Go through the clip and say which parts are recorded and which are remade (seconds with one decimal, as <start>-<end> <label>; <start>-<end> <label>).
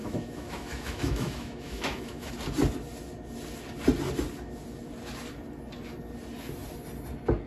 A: 0.0-2.3 remade; 2.3-7.5 recorded